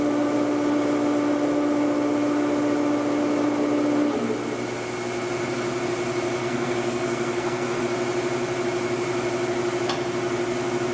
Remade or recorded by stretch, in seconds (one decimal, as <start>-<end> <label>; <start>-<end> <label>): 0.0-6.4 recorded; 6.4-7.8 remade; 7.8-10.9 recorded

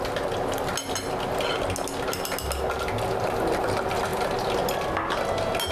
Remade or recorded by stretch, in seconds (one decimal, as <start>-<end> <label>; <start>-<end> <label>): 0.0-5.7 recorded